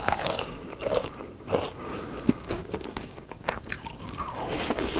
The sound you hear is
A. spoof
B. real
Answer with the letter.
A